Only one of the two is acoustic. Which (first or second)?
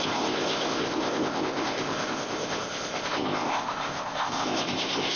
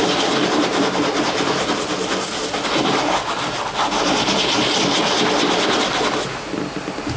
second